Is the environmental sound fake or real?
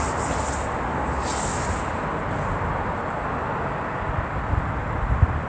real